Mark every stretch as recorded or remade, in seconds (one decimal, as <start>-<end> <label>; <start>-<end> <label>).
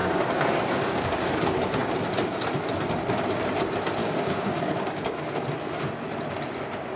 0.0-1.3 remade; 1.3-4.0 recorded; 4.0-5.3 remade; 5.3-7.0 recorded